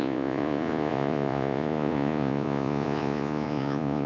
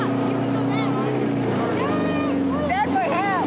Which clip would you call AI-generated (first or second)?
first